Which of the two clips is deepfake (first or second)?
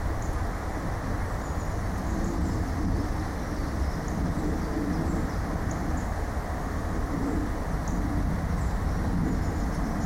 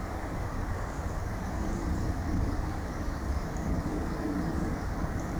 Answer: second